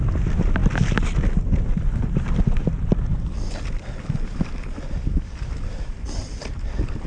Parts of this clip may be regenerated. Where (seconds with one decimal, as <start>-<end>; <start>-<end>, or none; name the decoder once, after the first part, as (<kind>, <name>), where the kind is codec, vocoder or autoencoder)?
none